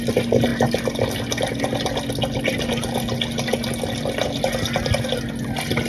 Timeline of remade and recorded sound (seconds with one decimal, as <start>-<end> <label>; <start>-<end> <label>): 0.0-5.9 recorded